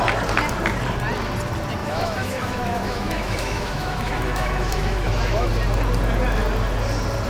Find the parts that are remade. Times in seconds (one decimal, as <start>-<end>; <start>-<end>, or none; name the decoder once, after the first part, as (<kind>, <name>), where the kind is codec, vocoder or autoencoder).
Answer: 1.8-5.5 (autoencoder, DAC-VAE)